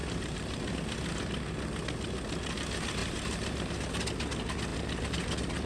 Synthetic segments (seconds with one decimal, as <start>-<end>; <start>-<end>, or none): 0.0-0.7; 3.0-3.7